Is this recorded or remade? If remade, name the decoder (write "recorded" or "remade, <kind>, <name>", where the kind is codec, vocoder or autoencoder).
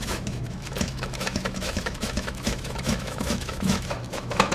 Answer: remade, autoencoder, DAC-VAE